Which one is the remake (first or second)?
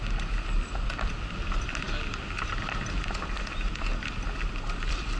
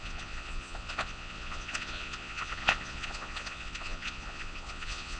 second